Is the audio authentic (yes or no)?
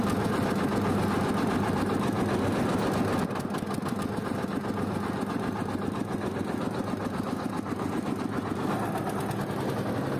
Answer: yes